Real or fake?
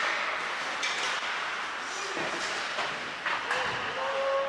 real